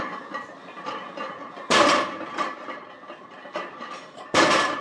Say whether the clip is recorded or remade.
remade